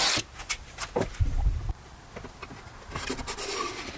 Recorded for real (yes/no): yes